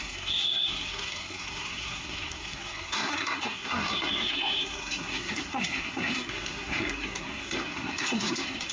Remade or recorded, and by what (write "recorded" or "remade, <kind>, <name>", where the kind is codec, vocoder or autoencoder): remade, codec, SNAC